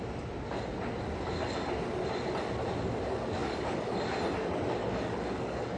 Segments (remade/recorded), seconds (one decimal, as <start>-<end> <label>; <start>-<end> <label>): 0.0-3.4 recorded; 3.4-3.9 remade; 3.9-4.8 recorded; 4.8-5.8 remade